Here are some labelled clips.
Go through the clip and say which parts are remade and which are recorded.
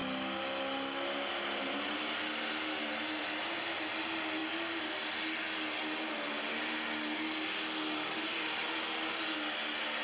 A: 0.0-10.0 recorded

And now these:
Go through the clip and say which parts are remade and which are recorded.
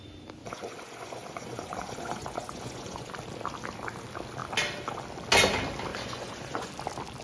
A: 0.0-0.4 recorded; 0.4-3.1 remade; 3.1-5.9 recorded; 5.9-6.7 remade; 6.7-7.2 recorded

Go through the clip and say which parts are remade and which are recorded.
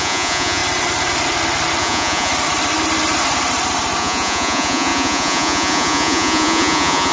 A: 0.0-0.6 remade; 0.6-1.8 recorded; 1.8-2.3 remade; 2.3-4.0 recorded; 4.0-7.1 remade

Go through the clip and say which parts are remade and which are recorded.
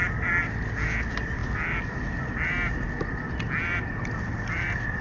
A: 0.0-5.0 recorded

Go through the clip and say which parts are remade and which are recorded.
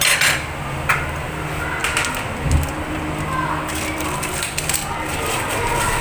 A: 0.0-6.0 recorded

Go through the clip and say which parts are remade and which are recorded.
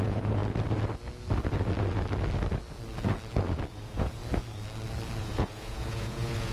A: 0.0-0.4 remade; 0.4-3.7 recorded; 3.7-4.2 remade; 4.2-5.2 recorded; 5.2-6.5 remade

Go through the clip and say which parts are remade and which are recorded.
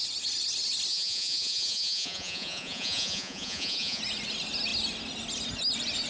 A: 0.0-0.9 recorded; 0.9-4.0 remade; 4.0-6.1 recorded